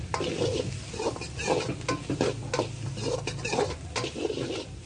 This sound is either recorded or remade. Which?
recorded